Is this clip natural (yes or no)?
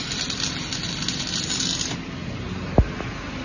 yes